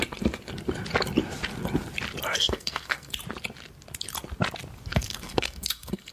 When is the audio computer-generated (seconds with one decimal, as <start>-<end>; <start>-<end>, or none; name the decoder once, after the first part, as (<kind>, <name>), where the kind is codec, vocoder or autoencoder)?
2.3-3.1 (codec, SNAC); 4.9-6.1